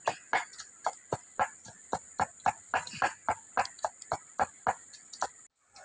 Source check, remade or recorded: recorded